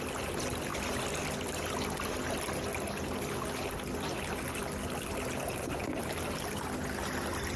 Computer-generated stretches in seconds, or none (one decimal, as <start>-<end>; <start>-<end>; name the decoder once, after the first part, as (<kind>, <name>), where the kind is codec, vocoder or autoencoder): none

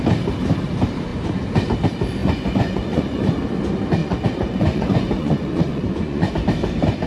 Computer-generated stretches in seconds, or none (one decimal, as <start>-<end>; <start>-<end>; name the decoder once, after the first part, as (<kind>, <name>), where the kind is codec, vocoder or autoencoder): 2.2-3.3 (vocoder, Vocos); 4.0-6.3

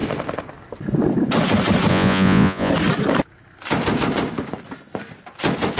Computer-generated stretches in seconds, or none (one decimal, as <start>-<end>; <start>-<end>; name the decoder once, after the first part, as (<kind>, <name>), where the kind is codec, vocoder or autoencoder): 1.9-2.7 (vocoder, Vocos)

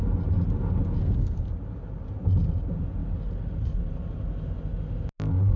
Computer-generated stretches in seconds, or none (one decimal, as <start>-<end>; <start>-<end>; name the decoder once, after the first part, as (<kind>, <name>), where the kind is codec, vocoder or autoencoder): 1.0-1.5 (codec, SNAC)

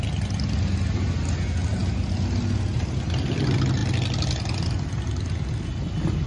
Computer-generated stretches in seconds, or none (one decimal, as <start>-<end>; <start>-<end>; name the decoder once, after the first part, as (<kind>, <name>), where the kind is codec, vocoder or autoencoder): none

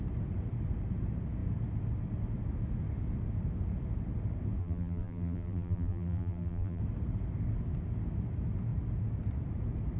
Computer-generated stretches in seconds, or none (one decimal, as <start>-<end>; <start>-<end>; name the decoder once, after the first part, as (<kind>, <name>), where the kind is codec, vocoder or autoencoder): 4.6-6.8 (vocoder, BigVGAN v2)

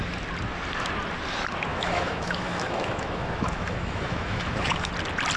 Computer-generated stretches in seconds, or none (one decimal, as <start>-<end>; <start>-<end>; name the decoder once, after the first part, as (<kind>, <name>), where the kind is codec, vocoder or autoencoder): 1.7-4.9 (autoencoder, DAC-VAE)

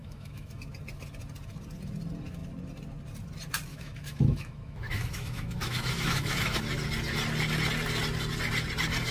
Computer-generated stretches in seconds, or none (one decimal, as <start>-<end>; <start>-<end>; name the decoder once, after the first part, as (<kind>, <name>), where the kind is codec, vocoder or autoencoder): 0.0-0.6 (autoencoder, DAC-VAE); 3.7-6.6